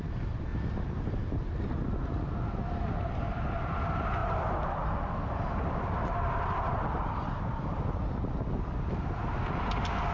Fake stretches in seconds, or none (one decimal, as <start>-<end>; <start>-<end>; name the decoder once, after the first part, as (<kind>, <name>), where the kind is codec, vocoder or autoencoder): 0.5-2.5 (vocoder, BigVGAN v2); 4.2-7.4